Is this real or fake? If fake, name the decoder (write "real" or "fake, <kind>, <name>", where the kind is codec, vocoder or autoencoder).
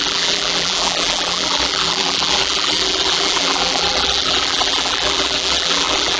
fake, vocoder, BigVGAN v2